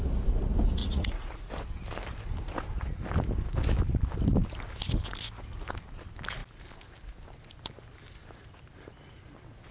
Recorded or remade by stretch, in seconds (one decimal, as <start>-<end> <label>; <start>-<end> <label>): 0.0-0.8 recorded; 0.8-1.5 remade; 1.5-9.7 recorded

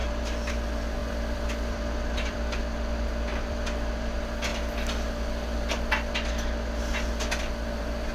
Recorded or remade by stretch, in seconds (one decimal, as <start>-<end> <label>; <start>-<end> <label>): 0.0-1.0 recorded; 1.0-2.6 remade; 2.6-3.3 recorded; 3.3-3.9 remade; 3.9-8.1 recorded

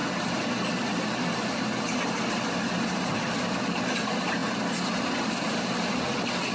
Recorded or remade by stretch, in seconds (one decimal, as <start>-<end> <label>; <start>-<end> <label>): 0.0-6.5 recorded

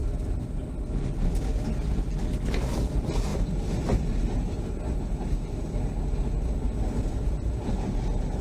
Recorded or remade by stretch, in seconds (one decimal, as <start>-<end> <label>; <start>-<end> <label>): 0.0-8.4 recorded

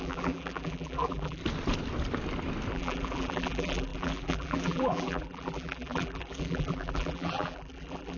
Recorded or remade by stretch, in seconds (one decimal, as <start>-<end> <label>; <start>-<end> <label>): 0.0-1.4 remade; 1.4-2.7 recorded; 2.7-8.2 remade